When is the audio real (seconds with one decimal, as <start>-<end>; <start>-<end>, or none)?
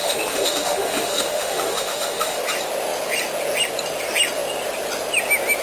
2.4-5.6